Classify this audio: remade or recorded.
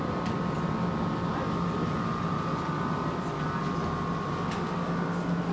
recorded